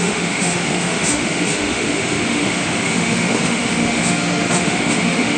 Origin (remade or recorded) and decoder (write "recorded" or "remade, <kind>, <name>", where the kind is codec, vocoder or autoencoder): remade, autoencoder, DAC-VAE